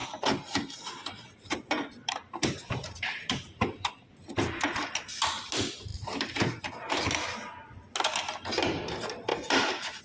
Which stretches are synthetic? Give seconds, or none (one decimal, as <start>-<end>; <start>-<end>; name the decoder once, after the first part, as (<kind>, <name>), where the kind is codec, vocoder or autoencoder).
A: 0.0-3.9 (vocoder, BigVGAN v2); 9.3-10.0